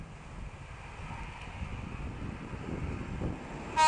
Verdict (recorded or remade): recorded